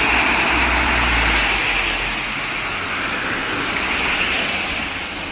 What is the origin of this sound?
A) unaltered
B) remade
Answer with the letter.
A